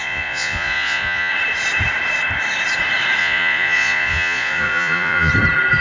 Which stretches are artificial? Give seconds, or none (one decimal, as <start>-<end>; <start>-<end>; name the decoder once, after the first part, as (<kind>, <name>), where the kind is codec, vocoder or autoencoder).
0.0-1.3 (vocoder, Vocos); 3.2-5.3